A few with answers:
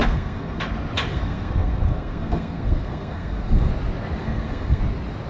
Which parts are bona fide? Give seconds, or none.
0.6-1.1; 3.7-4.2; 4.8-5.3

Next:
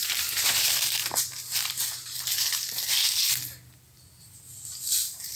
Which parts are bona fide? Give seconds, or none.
1.0-4.2

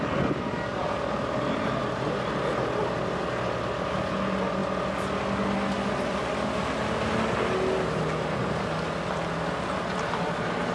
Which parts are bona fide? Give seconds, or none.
0.0-10.7

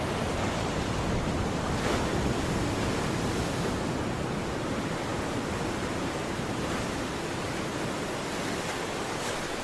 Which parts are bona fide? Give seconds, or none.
0.0-9.6